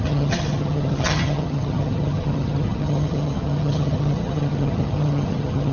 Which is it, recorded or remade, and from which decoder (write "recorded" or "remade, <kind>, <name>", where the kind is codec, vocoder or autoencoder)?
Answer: remade, vocoder, HiFi-GAN